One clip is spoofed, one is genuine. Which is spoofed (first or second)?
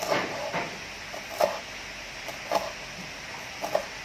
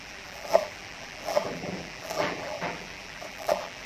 second